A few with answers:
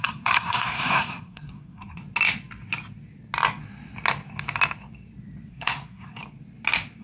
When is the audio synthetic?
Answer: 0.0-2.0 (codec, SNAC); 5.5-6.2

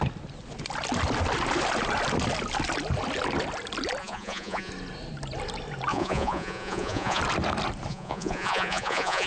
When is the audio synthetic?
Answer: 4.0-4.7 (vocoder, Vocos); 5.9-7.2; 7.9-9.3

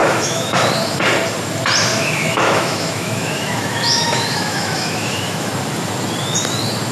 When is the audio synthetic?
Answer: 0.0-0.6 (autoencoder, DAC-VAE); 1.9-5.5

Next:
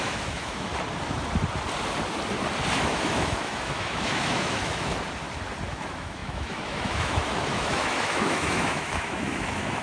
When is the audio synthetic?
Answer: 0.0-0.7 (autoencoder, DAC-VAE); 2.7-4.9; 5.7-9.8

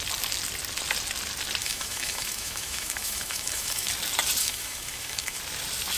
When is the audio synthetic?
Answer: 1.6-3.9 (autoencoder, DAC-VAE); 4.4-5.4

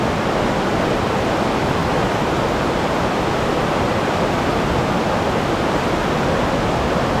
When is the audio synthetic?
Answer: none